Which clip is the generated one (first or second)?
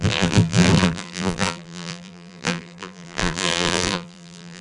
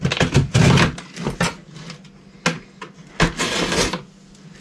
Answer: first